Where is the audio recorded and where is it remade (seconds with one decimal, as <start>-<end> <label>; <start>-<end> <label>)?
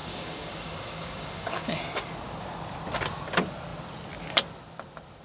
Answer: 0.0-1.8 remade; 1.8-5.2 recorded